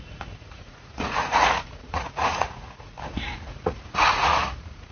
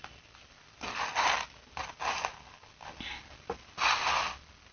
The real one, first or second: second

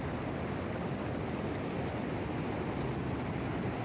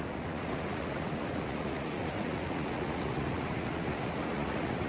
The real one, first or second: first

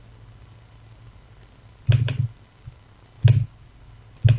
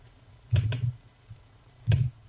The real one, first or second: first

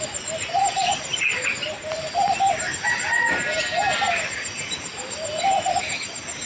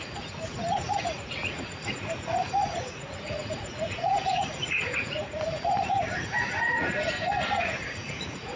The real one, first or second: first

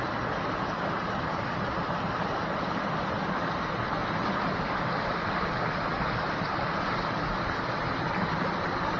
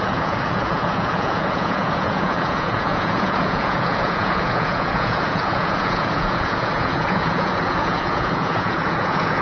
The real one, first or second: first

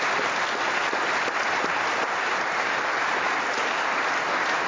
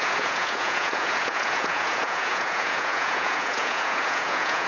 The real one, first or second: first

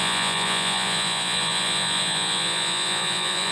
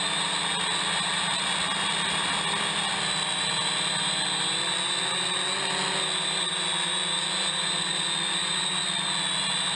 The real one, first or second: second